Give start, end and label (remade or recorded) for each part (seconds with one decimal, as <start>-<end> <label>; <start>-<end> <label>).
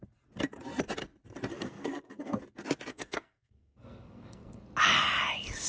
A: 0.0-1.5 recorded; 1.5-2.4 remade; 2.4-2.9 recorded; 2.9-4.6 remade; 4.6-5.7 recorded